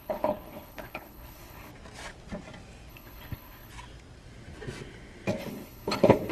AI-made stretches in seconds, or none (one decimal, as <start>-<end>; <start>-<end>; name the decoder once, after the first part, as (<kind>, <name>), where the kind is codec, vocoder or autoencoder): 0.0-1.7 (codec, HILCodec); 2.9-3.7; 5.4-6.3